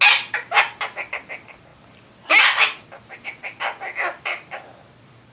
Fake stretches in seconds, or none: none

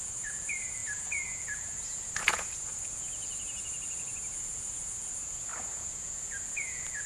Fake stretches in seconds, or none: 0.0-7.1 (vocoder, Vocos)

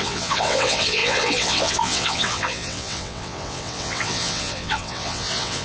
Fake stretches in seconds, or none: 0.0-5.6 (vocoder, WaveNeXt)

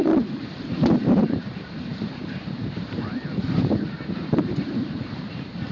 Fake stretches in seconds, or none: 0.0-5.7 (vocoder, BigVGAN v2)

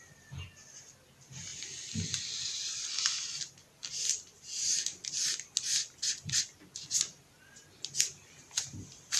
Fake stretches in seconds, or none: 1.5-2.9 (vocoder, BigVGAN v2)

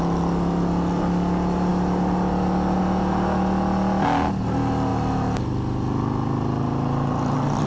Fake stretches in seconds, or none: none

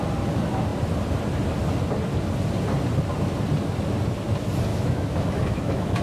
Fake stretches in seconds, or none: 4.7-6.0 (autoencoder, DAC-VAE)